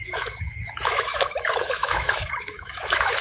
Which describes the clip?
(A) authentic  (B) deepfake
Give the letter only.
B